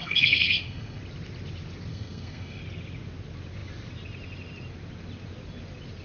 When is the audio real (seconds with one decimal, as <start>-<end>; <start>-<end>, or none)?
1.0-1.9; 2.6-6.0